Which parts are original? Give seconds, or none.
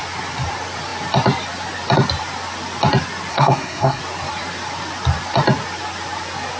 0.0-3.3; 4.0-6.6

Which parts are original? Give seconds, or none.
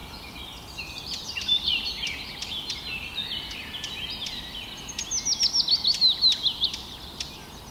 0.0-7.7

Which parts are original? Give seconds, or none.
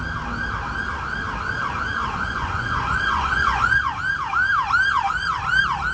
0.0-2.0; 4.0-5.9